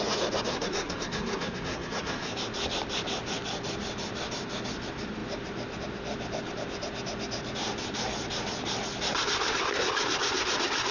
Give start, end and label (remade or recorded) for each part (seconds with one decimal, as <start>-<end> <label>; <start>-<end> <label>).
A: 0.0-0.5 recorded; 0.5-2.3 remade; 2.3-10.9 recorded